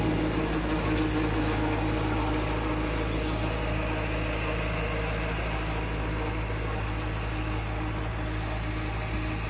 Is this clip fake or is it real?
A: real